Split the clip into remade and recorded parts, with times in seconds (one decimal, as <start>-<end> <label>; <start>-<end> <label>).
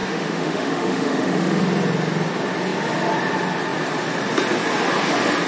0.0-1.6 remade; 1.6-5.5 recorded